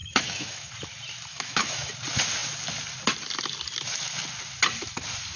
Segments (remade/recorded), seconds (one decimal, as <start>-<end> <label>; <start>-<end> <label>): 0.0-0.7 remade; 0.7-1.3 recorded; 1.3-1.9 remade; 1.9-5.4 recorded